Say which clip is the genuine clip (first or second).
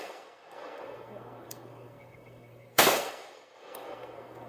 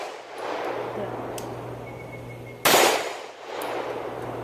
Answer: second